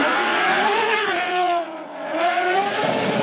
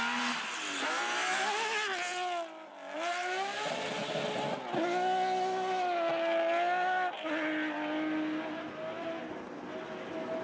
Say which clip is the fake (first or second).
first